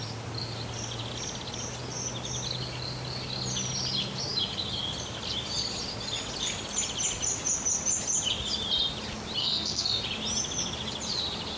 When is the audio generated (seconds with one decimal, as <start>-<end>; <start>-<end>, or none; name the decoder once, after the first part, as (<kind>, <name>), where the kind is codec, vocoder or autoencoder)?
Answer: 9.4-10.0 (codec, SNAC)